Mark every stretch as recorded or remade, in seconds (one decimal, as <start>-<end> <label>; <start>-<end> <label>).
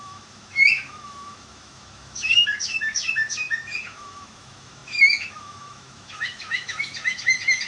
0.0-7.7 remade